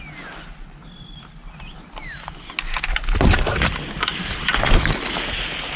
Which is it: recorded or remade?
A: recorded